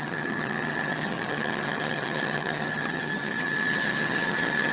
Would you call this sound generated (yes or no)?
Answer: yes